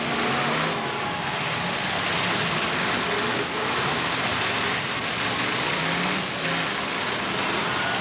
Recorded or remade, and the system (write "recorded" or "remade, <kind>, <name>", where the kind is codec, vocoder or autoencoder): recorded